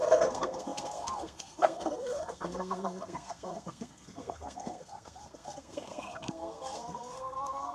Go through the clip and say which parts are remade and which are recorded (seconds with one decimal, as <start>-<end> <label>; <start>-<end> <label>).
0.0-7.7 remade